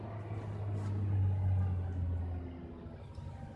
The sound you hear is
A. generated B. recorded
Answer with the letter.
B